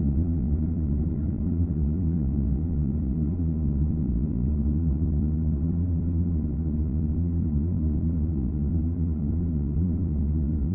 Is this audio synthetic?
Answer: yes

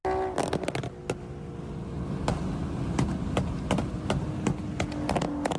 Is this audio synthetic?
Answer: no